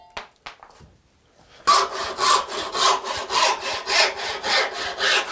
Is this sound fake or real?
real